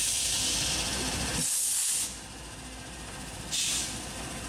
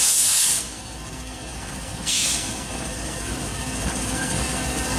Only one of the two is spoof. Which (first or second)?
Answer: second